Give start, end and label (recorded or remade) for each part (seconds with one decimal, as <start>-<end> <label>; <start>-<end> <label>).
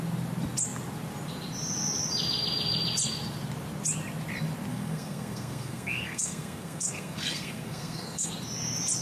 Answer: 0.0-4.7 recorded; 4.7-8.3 remade; 8.3-9.0 recorded